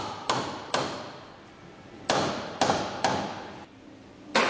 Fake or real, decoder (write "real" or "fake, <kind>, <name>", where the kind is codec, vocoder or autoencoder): real